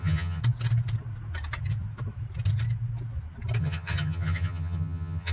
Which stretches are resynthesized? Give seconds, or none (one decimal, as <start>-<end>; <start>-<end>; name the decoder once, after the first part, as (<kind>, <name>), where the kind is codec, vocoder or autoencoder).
0.0-0.4 (vocoder, HiFi-GAN); 3.6-5.3